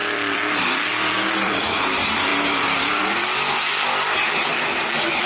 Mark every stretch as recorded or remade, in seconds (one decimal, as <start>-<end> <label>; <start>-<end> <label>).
0.0-1.8 remade; 1.8-2.3 recorded; 2.3-4.8 remade; 4.8-5.3 recorded